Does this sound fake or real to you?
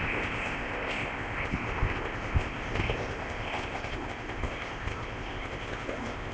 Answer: fake